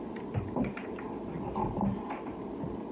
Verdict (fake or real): real